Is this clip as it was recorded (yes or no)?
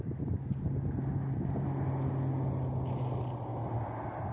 yes